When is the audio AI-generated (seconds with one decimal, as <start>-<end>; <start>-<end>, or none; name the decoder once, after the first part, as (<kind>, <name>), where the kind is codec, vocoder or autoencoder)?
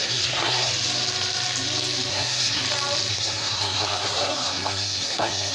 0.0-0.7 (codec, SNAC); 2.1-2.6; 3.1-5.5